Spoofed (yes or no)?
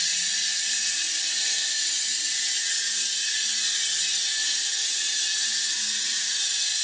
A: no